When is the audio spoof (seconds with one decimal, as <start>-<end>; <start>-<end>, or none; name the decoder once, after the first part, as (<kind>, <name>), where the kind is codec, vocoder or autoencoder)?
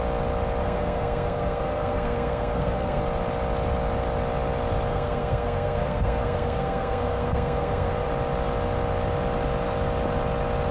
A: 0.6-3.0 (codec, SNAC); 4.9-8.1